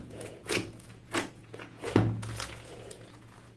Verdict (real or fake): fake